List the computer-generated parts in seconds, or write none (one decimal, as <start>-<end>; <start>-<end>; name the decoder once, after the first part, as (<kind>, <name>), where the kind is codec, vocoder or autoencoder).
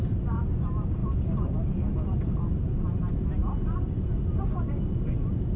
1.0-2.8 (vocoder, BigVGAN v2); 3.4-4.8